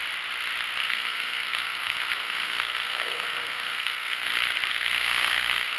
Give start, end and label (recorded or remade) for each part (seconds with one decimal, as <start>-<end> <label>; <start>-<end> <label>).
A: 0.0-0.8 recorded; 0.8-4.3 remade; 4.3-4.7 recorded; 4.7-5.8 remade